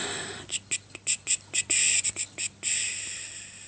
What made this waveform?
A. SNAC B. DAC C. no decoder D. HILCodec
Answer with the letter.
C